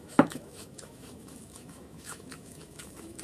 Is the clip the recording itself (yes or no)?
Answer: no